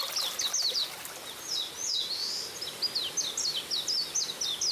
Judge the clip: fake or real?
real